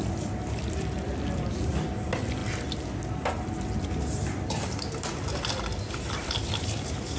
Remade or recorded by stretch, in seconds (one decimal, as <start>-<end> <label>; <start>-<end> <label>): 0.0-2.4 remade; 2.4-5.9 recorded; 5.9-7.2 remade